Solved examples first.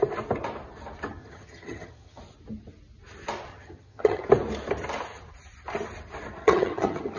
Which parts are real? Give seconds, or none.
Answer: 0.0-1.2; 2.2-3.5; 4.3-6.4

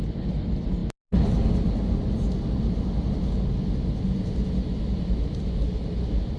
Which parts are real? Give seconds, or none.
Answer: 0.0-6.4

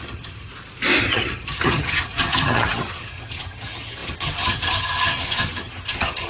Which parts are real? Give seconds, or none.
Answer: 0.5-1.0